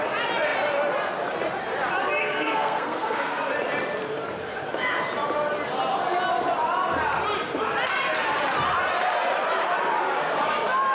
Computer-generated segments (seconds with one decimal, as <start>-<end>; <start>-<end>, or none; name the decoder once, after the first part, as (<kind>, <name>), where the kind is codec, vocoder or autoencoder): 2.2-3.5 (codec, SNAC)